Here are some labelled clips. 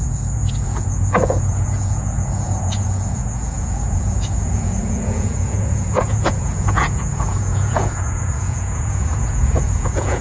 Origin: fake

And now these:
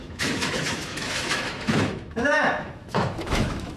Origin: fake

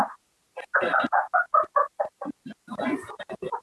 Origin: real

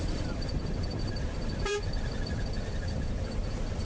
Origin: fake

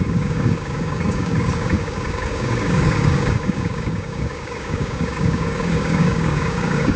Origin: fake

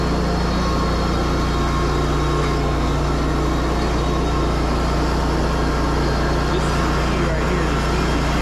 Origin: real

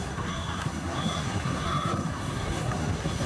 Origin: fake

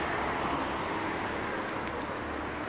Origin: real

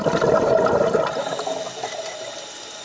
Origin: real